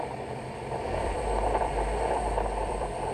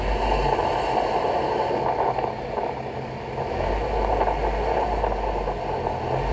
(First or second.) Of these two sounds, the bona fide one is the second